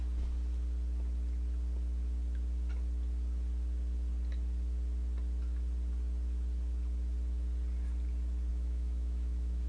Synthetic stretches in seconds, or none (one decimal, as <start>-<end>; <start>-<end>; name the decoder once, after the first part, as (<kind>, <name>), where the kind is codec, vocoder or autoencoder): 8.5-9.7 (autoencoder, DAC-VAE)